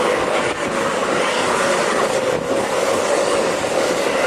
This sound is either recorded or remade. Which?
remade